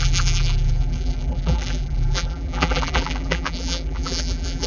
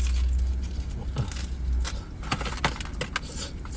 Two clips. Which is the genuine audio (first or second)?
second